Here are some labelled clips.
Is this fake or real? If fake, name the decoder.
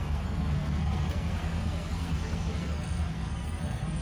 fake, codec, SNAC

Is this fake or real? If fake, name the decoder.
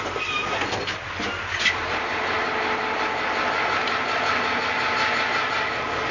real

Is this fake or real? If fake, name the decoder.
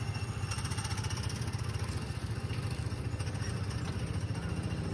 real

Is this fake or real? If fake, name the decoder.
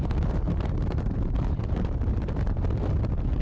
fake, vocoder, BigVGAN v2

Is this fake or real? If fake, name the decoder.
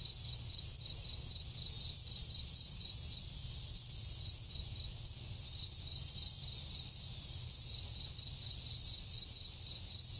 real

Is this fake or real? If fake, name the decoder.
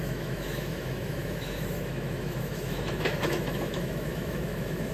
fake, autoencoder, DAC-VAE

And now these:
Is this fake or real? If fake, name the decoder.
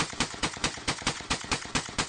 fake, vocoder, Vocos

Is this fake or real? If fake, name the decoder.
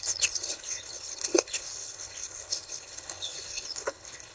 fake, codec, HILCodec